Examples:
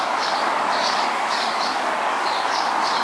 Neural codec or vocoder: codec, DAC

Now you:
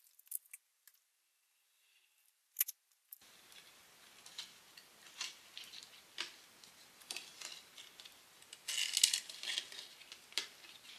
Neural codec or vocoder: none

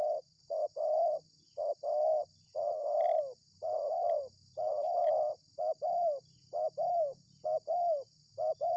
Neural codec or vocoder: none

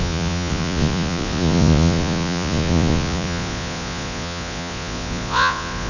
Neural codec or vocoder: vocoder, Vocos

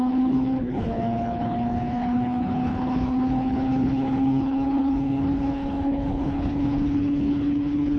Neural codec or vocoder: codec, HILCodec